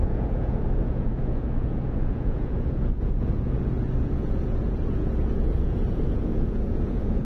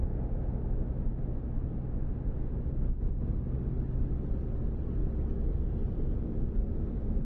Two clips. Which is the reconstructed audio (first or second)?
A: first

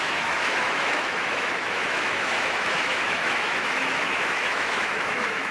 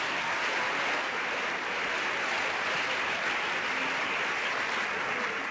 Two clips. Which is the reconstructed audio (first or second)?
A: first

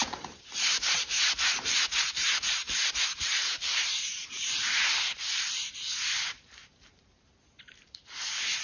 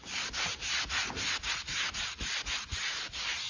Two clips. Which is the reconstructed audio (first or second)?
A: first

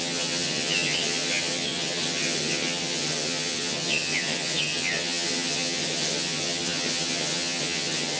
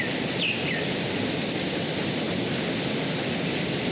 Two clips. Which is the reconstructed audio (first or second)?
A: first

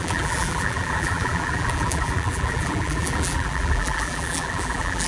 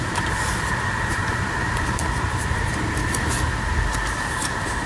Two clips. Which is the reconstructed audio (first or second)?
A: first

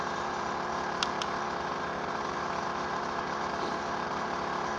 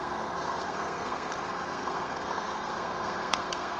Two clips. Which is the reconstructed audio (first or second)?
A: second